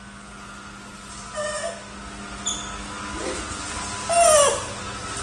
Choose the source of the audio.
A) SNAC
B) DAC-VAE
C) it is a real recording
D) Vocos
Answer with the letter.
C